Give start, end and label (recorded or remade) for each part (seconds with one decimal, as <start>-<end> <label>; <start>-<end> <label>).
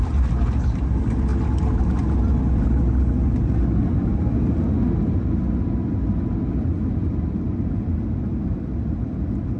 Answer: 0.0-9.6 recorded